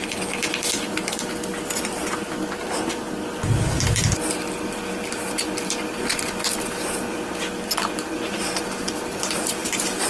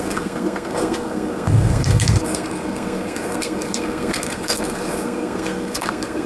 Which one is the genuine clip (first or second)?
first